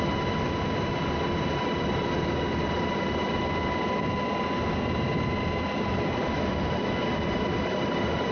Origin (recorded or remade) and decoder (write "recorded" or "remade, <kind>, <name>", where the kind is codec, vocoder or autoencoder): recorded